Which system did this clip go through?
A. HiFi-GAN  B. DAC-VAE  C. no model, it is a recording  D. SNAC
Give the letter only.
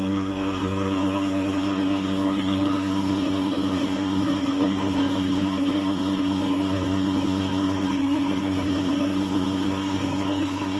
D